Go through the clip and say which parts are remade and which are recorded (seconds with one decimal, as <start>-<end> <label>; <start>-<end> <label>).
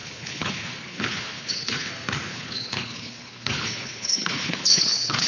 0.0-1.9 remade; 1.9-2.3 recorded; 2.3-5.3 remade